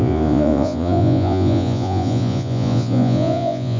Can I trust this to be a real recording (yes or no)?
no